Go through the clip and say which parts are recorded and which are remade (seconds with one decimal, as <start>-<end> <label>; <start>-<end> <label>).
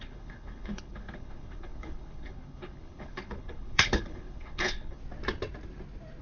0.0-5.0 remade; 5.0-6.2 recorded